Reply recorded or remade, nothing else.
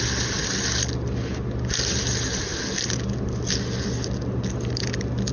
recorded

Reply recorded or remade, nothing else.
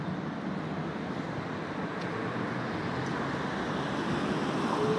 recorded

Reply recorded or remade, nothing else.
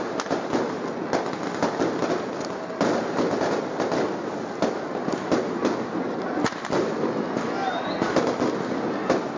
recorded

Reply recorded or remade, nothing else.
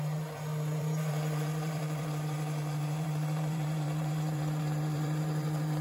remade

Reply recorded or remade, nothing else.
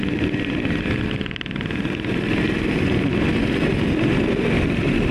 recorded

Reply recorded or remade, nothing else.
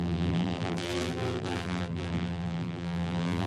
remade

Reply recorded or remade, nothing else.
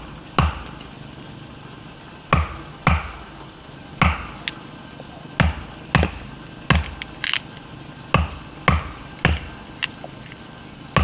recorded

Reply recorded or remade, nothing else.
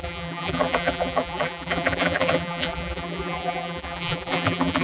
remade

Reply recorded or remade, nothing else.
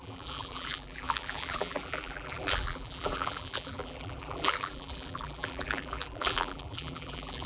remade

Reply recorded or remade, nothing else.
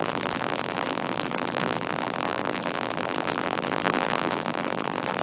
remade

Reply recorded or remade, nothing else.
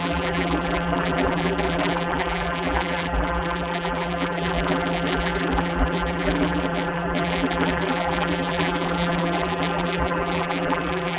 remade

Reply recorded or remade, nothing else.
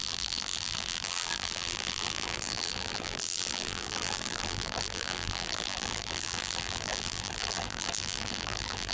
remade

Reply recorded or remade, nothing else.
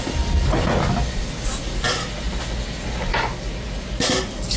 recorded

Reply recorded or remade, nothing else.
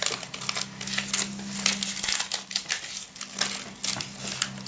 recorded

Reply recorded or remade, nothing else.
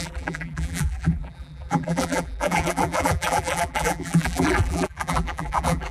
remade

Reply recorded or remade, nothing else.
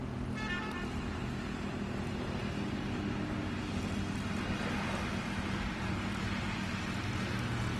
recorded